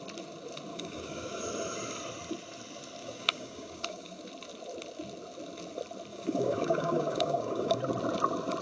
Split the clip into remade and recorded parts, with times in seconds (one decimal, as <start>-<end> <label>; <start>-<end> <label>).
0.0-0.7 recorded; 0.7-1.4 remade; 1.4-3.0 recorded; 3.0-4.2 remade; 4.2-6.1 recorded; 6.1-7.8 remade; 7.8-8.6 recorded